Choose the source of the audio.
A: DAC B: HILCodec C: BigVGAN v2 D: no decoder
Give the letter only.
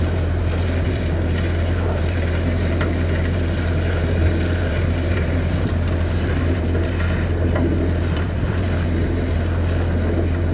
C